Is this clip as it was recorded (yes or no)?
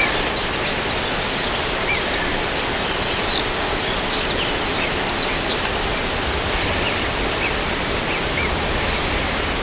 yes